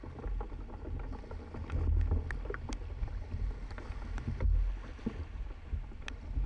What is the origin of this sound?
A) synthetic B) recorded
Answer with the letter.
B